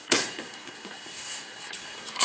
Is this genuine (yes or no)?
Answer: no